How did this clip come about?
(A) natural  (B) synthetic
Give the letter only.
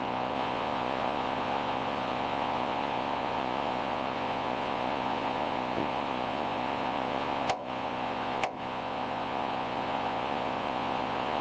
B